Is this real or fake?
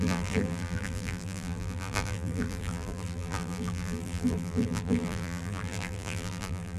fake